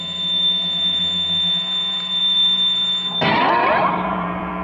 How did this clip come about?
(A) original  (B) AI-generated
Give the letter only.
B